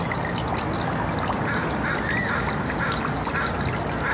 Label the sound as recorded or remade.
recorded